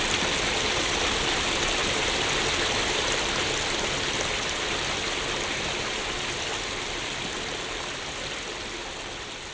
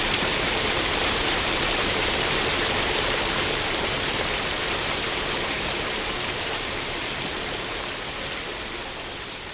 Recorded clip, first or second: first